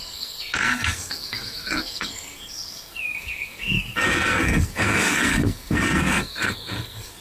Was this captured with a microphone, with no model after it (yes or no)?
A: no